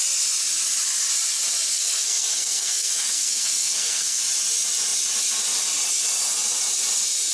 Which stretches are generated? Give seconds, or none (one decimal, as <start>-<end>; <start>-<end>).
1.7-4.2